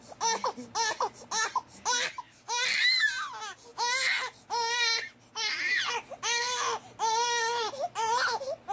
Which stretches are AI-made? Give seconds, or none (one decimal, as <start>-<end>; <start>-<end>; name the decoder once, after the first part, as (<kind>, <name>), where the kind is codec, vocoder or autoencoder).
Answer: none